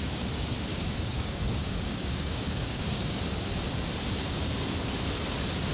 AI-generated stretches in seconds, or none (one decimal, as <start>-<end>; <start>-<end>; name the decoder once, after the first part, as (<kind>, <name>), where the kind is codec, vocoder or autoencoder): 0.7-3.2 (codec, DAC)